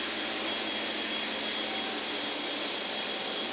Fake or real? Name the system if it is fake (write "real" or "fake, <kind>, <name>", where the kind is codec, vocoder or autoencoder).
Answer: real